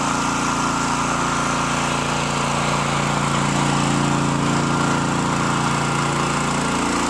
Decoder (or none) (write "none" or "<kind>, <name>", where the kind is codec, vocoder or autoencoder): none